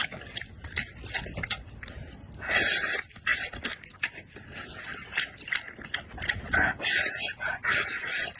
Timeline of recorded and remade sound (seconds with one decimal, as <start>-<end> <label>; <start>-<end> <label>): 0.0-8.4 recorded